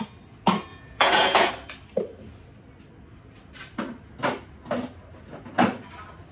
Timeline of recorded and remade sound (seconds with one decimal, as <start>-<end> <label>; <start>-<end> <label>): 0.0-0.7 recorded; 0.7-1.5 remade; 1.5-6.3 recorded

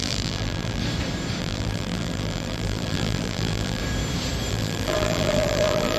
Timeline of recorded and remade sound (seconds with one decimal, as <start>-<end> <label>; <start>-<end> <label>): 0.0-0.8 remade; 0.8-1.4 recorded; 1.4-3.8 remade; 3.8-4.5 recorded; 4.5-6.0 remade

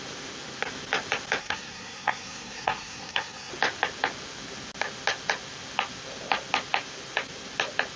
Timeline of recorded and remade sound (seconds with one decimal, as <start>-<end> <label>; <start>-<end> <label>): 0.0-1.4 recorded; 1.4-3.5 remade; 3.5-8.0 recorded

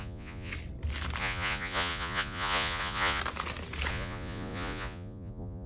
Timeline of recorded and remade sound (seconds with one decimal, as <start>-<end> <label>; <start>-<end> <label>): 0.0-0.5 remade; 0.5-1.2 recorded; 1.2-3.2 remade; 3.2-3.9 recorded; 3.9-5.7 remade

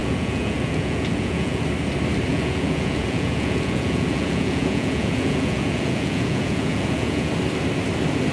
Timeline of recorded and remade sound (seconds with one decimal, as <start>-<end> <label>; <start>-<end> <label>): 0.0-1.6 remade; 1.6-2.3 recorded; 2.3-7.3 remade; 7.3-8.3 recorded